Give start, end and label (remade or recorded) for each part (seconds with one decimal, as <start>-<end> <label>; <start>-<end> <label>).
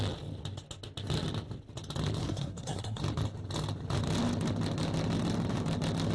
0.0-2.2 recorded; 2.2-3.0 remade; 3.0-6.1 recorded